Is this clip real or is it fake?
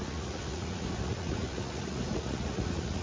fake